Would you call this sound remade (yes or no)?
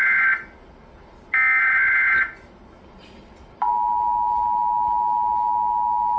no